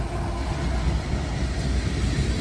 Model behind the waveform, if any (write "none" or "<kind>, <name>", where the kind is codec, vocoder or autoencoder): none